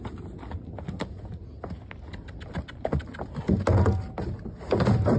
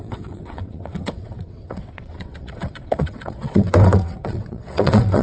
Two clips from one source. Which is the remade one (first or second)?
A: second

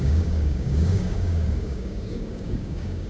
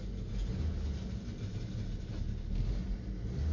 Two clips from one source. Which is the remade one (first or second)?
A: first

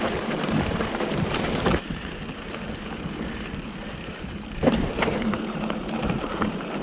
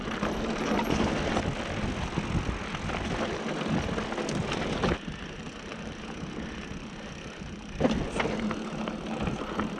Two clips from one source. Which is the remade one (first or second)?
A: first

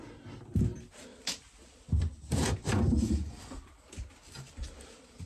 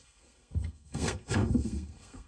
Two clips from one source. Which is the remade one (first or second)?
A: second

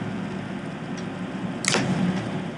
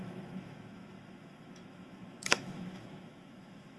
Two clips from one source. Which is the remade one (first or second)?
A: second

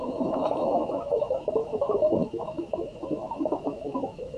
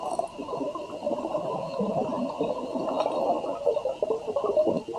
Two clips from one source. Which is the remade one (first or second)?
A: first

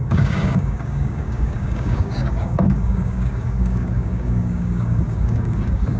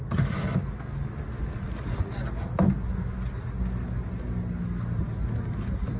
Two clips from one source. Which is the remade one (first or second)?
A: first